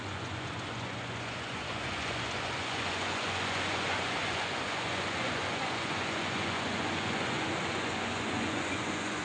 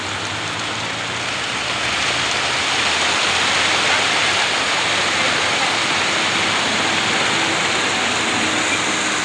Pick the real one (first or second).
second